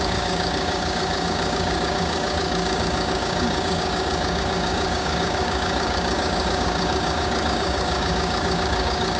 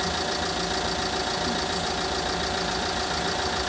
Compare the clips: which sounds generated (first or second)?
first